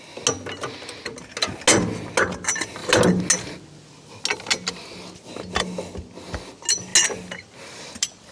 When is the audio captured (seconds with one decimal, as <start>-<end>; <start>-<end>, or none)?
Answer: 0.0-8.3